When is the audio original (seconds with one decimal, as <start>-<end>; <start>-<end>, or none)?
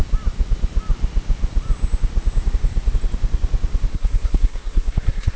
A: 0.0-3.9